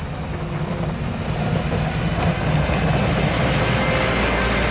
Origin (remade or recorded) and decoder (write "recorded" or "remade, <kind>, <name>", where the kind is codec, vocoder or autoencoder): recorded